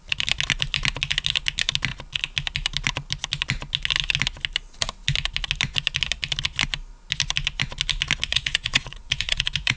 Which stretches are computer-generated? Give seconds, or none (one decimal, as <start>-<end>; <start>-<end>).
8.3-9.8